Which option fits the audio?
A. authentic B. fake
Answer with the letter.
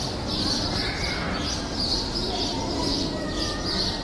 A